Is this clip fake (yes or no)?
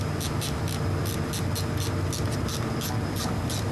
no